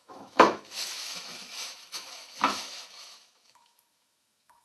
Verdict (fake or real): fake